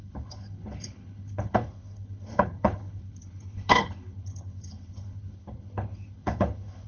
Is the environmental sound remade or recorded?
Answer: remade